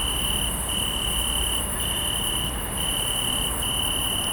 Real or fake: real